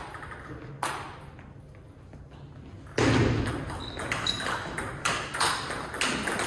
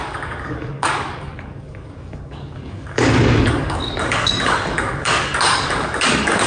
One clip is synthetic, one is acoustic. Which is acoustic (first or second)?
first